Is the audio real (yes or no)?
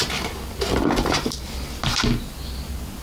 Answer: yes